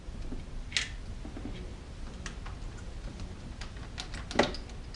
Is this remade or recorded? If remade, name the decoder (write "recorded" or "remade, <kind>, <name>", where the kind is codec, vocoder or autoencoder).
recorded